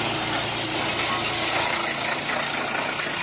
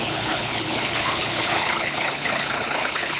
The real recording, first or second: first